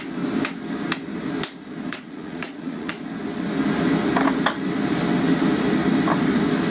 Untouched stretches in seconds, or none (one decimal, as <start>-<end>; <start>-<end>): 0.0-1.9; 2.9-6.7